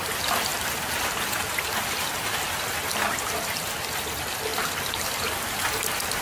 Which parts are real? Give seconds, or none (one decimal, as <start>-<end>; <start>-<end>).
0.0-0.5; 2.2-4.5